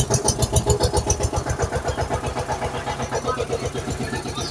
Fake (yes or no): no